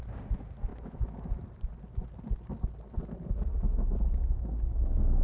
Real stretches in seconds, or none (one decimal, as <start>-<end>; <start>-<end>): 0.0-0.7; 1.3-5.2